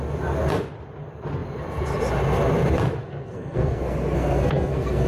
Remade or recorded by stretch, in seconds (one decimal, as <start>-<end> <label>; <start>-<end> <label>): 0.0-3.0 recorded; 3.0-5.1 remade